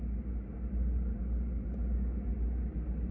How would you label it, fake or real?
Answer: real